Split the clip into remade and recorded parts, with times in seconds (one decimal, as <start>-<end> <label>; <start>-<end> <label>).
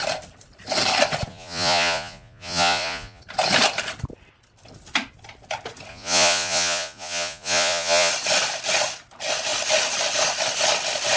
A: 0.0-1.3 recorded; 1.3-3.2 remade; 3.2-5.9 recorded; 5.9-8.1 remade; 8.1-11.2 recorded